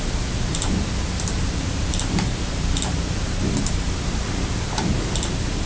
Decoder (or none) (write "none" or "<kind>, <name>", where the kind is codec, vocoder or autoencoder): vocoder, BigVGAN v2